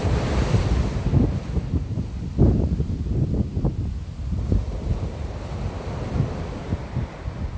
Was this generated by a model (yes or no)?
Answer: no